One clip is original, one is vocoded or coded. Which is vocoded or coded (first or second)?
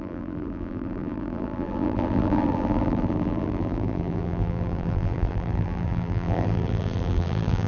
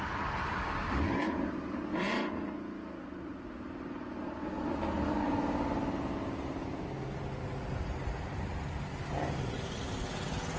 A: first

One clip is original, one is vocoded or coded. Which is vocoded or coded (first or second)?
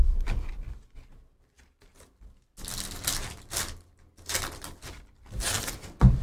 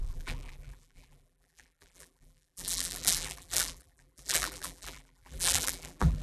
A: second